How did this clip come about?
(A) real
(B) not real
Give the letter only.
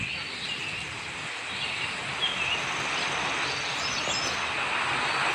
A